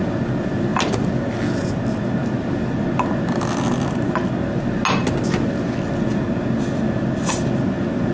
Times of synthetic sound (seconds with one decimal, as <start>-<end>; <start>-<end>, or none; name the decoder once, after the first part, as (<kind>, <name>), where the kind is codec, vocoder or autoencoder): none